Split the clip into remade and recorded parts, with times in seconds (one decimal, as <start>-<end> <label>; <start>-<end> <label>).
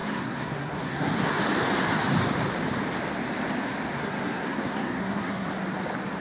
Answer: 0.0-1.4 remade; 1.4-3.9 recorded; 3.9-5.5 remade; 5.5-6.2 recorded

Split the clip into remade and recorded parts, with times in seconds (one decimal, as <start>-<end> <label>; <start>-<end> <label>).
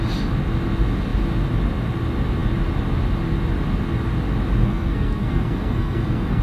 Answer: 0.0-4.6 recorded; 4.6-6.4 remade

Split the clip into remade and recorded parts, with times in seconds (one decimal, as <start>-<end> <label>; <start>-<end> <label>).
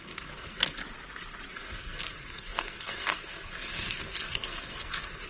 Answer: 0.0-0.8 remade; 0.8-1.5 recorded; 1.5-5.3 remade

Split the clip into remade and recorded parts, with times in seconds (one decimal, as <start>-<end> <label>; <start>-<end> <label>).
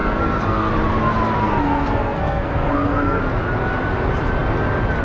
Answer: 0.0-0.7 remade; 0.7-1.4 recorded; 1.4-3.2 remade; 3.2-5.0 recorded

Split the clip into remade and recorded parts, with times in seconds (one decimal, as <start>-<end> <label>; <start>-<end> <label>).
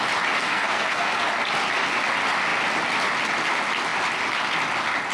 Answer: 0.0-0.4 recorded; 0.4-1.2 remade; 1.2-5.1 recorded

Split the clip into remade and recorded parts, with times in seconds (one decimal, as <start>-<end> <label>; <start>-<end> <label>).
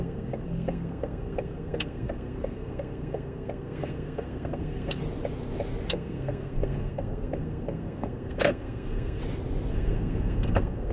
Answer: 0.0-5.0 remade; 5.0-5.9 recorded; 5.9-9.2 remade; 9.2-9.7 recorded; 9.7-10.9 remade